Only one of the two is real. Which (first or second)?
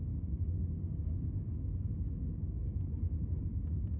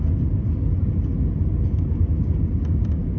second